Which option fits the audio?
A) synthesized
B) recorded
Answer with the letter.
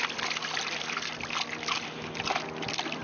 B